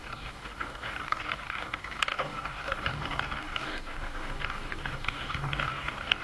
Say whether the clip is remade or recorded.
remade